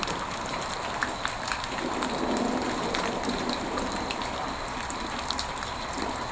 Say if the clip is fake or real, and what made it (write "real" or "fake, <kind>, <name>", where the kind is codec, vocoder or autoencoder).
real